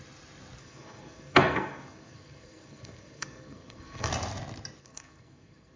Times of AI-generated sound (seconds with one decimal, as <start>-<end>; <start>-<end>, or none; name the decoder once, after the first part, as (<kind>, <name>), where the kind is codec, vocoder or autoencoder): 0.6-4.1 (codec, SNAC); 4.8-5.8